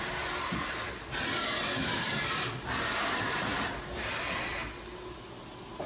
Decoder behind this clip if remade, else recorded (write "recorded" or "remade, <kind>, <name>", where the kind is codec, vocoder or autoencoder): recorded